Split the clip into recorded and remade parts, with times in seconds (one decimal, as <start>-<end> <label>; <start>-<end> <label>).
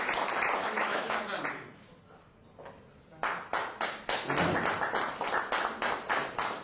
0.0-0.6 recorded; 0.6-1.2 remade; 1.2-6.6 recorded